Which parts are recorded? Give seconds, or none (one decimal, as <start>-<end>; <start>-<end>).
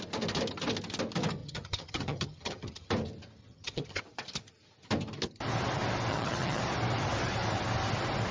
0.0-1.4; 2.9-3.4; 4.0-6.1; 6.6-8.3